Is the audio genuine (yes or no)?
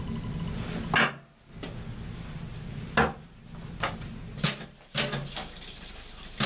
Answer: yes